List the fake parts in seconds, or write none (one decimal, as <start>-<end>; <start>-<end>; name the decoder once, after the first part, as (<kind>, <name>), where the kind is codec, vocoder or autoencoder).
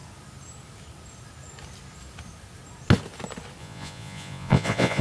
3.6-5.0 (vocoder, Vocos)